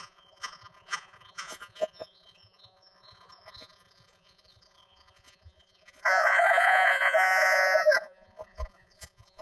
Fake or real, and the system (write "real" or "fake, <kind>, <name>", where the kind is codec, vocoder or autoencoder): fake, vocoder, Vocos